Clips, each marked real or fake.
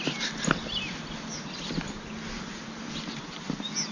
real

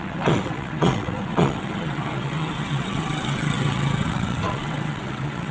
fake